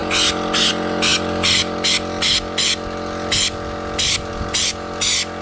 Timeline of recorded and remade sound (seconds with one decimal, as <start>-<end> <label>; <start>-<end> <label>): 0.0-5.4 recorded

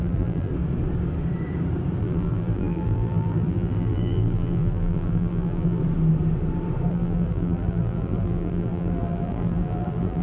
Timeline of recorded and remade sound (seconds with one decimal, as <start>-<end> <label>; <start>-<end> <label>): 0.0-0.5 remade; 0.5-2.0 recorded; 2.0-5.8 remade; 5.8-6.9 recorded; 6.9-10.2 remade

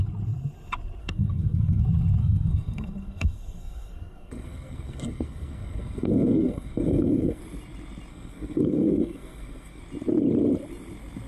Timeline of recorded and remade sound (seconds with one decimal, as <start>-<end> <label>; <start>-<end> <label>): 0.0-1.0 recorded; 1.0-1.8 remade; 1.8-2.2 recorded; 2.2-7.4 remade; 7.4-8.1 recorded; 8.1-9.8 remade; 9.8-11.3 recorded